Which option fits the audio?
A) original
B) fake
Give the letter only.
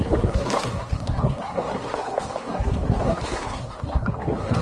B